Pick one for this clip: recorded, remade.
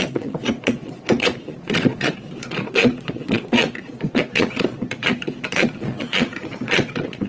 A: remade